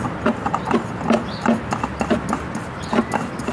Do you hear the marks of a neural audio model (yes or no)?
no